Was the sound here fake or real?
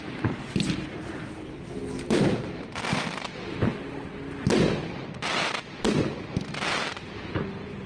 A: real